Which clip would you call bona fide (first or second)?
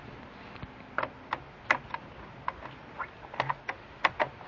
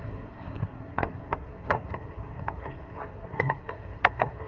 first